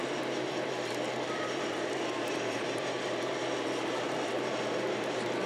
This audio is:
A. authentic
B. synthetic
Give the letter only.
B